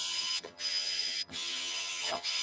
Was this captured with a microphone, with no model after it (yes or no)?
no